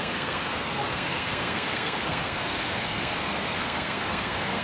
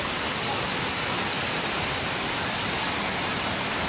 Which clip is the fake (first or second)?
first